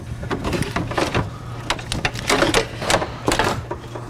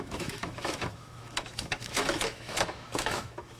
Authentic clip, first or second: first